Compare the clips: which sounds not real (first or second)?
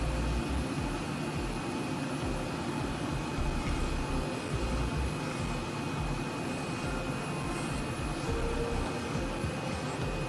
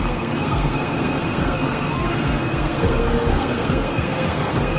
second